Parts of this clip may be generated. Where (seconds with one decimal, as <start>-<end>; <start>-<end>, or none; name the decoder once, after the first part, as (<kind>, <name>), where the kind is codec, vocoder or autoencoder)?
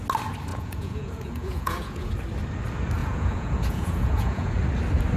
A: 0.5-2.1 (vocoder, Vocos); 3.0-4.5